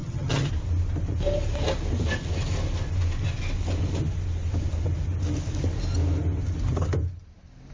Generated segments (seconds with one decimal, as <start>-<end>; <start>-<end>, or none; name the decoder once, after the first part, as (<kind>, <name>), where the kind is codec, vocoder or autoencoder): 0.0-0.5 (vocoder, HiFi-GAN)